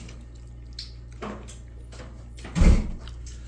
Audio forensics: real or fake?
real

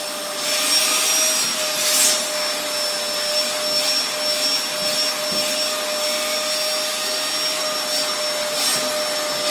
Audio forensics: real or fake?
real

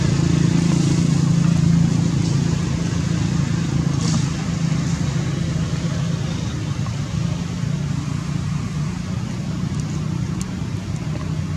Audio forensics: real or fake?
real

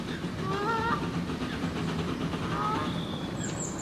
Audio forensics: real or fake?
real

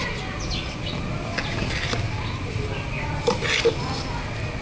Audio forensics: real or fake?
real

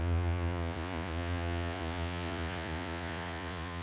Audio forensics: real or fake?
fake